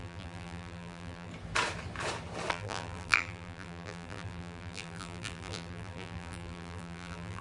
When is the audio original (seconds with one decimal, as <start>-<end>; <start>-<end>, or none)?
1.3-2.5